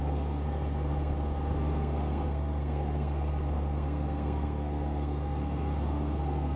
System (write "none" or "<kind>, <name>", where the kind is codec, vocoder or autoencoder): codec, SNAC